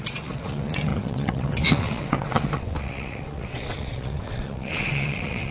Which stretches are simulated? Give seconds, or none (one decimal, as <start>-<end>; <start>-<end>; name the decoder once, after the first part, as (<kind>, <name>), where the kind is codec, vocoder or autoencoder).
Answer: 0.0-5.5 (vocoder, WaveNeXt)